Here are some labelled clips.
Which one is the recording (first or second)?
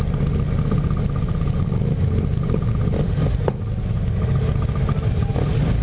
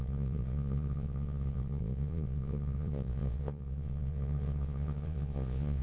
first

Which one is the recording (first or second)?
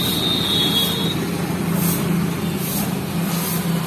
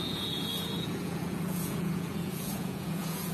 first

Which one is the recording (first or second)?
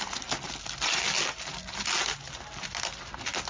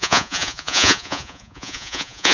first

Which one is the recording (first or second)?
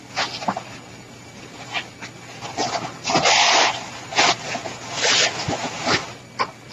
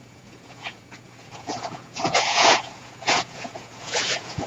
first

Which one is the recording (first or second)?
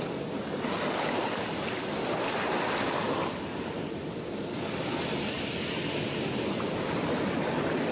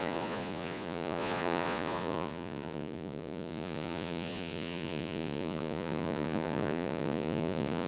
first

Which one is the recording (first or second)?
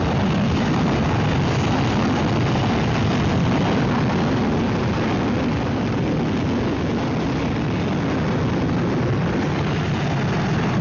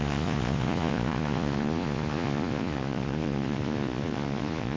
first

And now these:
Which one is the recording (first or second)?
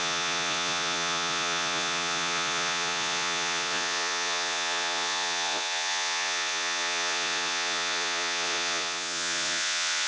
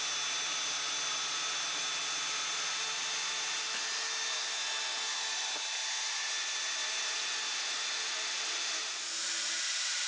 second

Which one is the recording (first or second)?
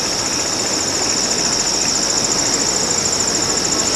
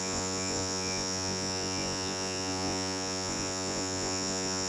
first